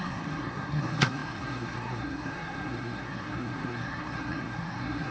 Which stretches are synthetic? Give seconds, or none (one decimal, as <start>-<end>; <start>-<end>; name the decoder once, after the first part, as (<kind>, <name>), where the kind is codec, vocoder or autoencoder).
0.0-5.1 (codec, SNAC)